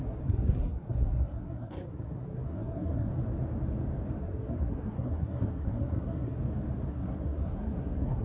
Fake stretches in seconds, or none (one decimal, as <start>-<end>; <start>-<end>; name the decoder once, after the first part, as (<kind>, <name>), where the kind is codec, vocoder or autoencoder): 0.0-3.1 (codec, SNAC); 4.2-6.4; 6.9-8.2